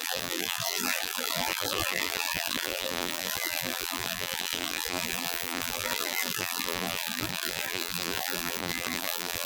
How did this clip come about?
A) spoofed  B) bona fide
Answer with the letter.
A